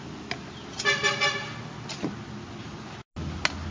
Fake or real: real